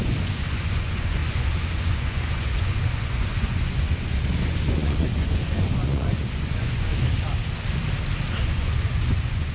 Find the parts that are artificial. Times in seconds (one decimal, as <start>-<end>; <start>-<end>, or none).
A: 0.0-6.9; 8.3-9.5